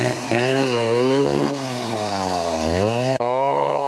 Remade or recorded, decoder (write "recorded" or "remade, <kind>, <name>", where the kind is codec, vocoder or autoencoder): remade, codec, SNAC